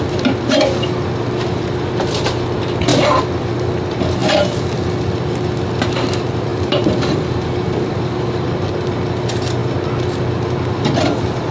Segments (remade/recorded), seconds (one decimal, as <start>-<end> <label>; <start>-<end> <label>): 0.0-6.5 recorded; 6.5-8.7 remade; 8.7-11.5 recorded